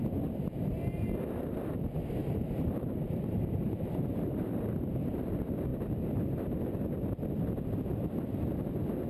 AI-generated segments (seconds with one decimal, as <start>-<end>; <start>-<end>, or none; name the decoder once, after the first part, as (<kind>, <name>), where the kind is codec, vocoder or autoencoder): 2.2-5.2 (vocoder, BigVGAN v2)